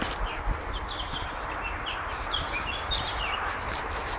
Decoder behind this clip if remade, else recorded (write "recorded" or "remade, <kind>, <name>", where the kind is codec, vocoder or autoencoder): recorded